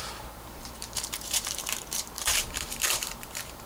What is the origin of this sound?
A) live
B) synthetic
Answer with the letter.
B